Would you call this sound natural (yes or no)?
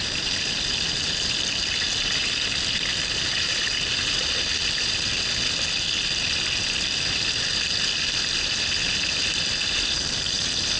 yes